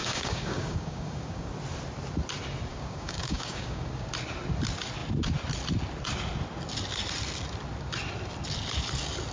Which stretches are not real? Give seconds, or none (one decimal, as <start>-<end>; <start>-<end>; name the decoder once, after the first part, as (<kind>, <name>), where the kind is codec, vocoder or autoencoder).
0.0-1.5 (codec, DAC); 2.7-4.1